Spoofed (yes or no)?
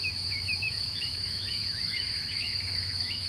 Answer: yes